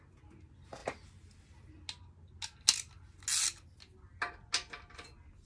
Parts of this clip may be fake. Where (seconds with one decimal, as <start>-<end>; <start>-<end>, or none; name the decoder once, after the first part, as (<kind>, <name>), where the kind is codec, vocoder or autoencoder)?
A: none